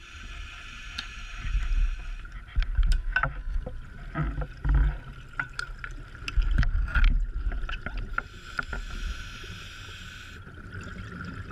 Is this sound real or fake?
real